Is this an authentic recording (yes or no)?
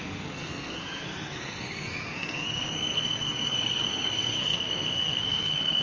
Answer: no